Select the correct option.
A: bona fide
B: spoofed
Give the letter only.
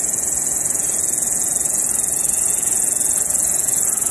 B